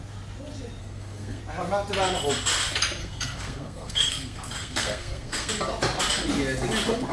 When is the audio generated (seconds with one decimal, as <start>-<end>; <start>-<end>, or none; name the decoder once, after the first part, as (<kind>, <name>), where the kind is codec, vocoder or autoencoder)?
0.8-1.4 (codec, SNAC); 3.0-5.5